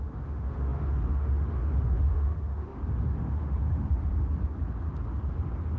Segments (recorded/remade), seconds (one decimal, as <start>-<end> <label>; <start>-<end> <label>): 0.0-4.1 remade; 4.1-5.8 recorded